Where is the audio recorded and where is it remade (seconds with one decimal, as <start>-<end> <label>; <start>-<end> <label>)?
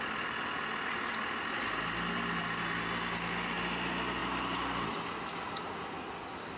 0.0-4.2 recorded; 4.2-4.9 remade; 4.9-6.6 recorded